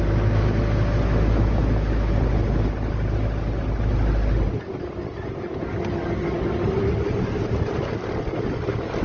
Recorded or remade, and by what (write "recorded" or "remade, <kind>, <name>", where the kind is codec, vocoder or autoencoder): recorded